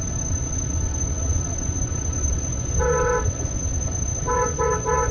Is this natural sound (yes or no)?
no